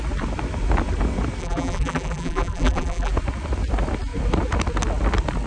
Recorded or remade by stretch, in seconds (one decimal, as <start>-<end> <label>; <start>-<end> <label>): 0.0-1.4 recorded; 1.4-3.1 remade; 3.1-5.5 recorded